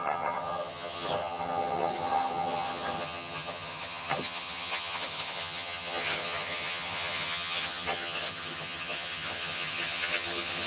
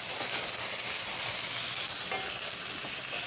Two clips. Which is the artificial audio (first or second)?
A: first